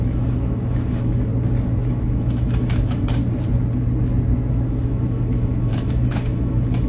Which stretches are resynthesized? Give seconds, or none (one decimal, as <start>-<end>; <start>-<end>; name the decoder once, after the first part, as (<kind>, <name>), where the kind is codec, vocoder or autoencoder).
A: 0.0-1.3 (autoencoder, DAC-VAE); 1.9-3.2; 4.5-6.9